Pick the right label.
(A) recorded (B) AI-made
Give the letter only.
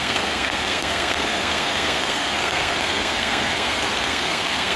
B